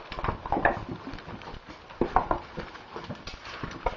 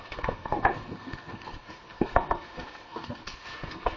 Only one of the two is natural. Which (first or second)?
first